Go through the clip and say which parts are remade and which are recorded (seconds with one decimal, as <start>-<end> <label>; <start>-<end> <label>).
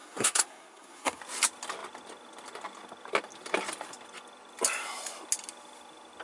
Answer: 0.0-1.2 remade; 1.2-6.2 recorded